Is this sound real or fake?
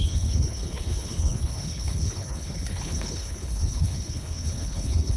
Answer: fake